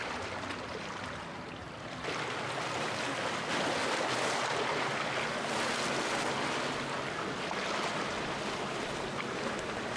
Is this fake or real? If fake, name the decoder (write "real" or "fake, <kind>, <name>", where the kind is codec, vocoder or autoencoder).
real